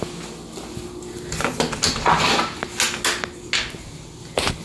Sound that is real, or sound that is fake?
real